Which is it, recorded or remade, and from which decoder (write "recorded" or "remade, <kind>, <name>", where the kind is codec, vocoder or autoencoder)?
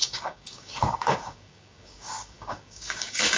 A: remade, codec, DAC